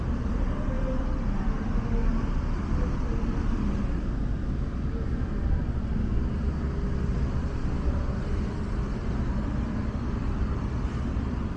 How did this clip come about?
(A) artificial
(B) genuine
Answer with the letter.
B